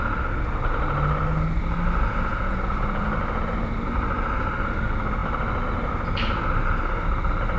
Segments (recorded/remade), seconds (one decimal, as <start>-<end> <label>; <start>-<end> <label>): 0.0-2.3 recorded; 2.3-3.1 remade; 3.1-7.6 recorded